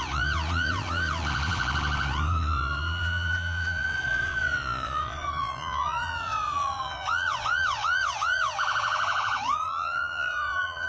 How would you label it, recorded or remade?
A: remade